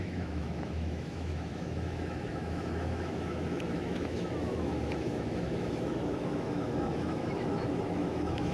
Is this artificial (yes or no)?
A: yes